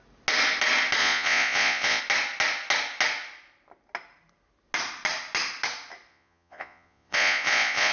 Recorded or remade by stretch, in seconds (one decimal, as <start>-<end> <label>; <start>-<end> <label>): 0.0-1.0 recorded; 1.0-2.0 remade; 2.0-6.1 recorded; 6.1-7.9 remade